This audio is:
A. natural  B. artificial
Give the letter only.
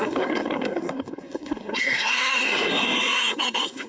B